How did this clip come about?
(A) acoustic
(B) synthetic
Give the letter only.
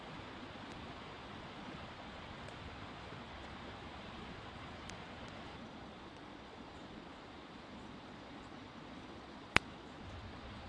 B